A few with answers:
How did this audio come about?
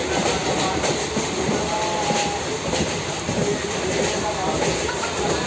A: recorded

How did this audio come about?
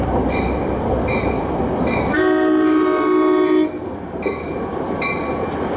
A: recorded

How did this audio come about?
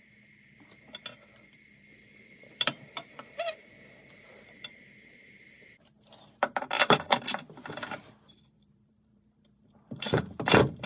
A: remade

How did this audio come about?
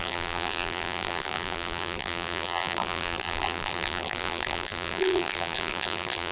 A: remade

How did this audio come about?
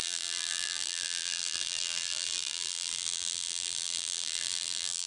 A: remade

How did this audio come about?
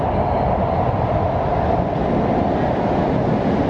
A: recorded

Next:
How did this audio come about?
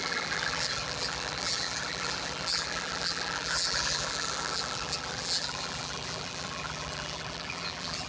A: remade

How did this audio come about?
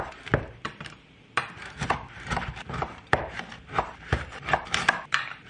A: remade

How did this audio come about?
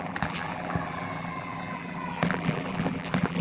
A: remade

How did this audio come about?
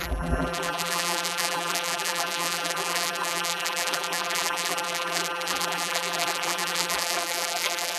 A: remade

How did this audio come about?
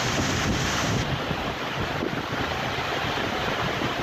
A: recorded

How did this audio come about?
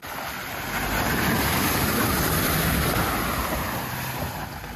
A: recorded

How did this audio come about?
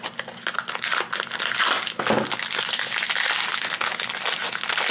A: recorded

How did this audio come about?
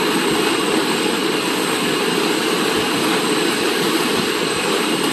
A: recorded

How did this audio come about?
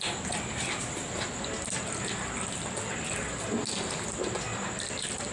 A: recorded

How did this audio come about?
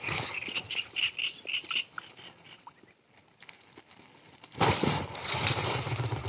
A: remade